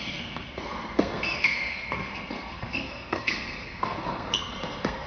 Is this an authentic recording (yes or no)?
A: no